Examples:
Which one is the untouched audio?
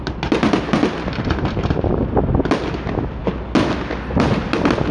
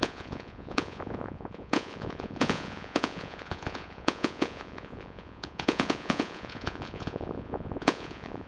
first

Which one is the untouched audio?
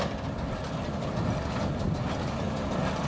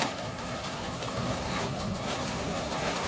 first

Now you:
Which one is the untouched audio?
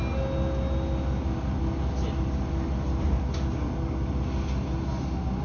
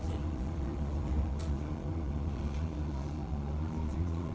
first